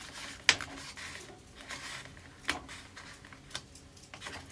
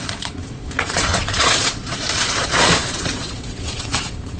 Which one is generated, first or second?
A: second